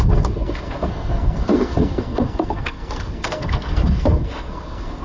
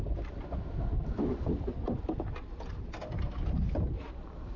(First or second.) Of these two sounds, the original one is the second